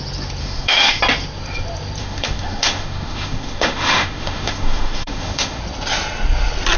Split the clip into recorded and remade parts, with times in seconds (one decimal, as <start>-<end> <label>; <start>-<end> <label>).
0.0-0.4 recorded; 0.4-1.0 remade; 1.0-2.0 recorded; 2.0-5.6 remade; 5.6-6.8 recorded